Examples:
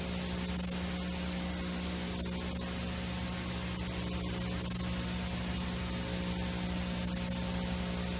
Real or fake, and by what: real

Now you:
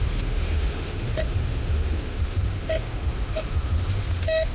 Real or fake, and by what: fake, autoencoder, DAC-VAE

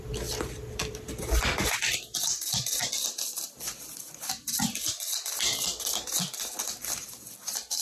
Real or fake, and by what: real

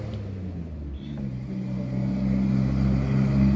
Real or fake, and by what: real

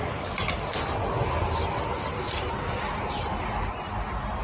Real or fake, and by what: real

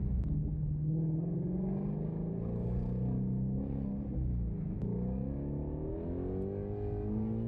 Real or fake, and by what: real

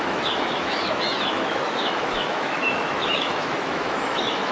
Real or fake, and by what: fake, autoencoder, DAC-VAE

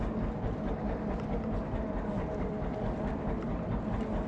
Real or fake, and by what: real